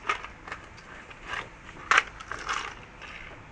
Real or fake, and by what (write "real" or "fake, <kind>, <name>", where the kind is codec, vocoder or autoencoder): real